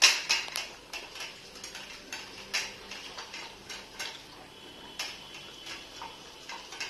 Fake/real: real